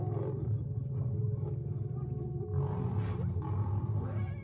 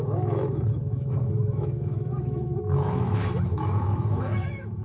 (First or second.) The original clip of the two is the first